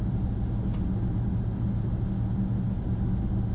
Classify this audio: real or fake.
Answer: real